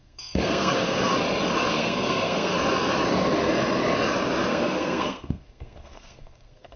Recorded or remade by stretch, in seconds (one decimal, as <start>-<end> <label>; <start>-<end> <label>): 0.0-1.1 remade; 1.1-1.7 recorded; 1.7-2.5 remade; 2.5-4.5 recorded; 4.5-6.8 remade